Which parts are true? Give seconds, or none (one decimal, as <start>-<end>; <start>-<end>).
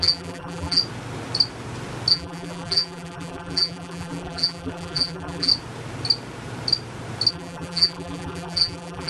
0.8-2.1; 5.5-7.3